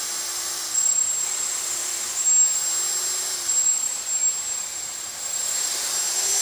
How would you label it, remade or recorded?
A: recorded